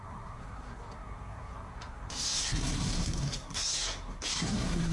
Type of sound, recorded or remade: remade